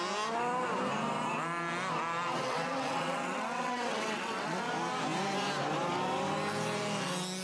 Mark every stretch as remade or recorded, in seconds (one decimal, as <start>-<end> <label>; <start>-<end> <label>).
0.0-2.3 recorded; 2.3-4.6 remade; 4.6-7.4 recorded